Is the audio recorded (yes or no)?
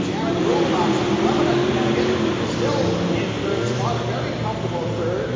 yes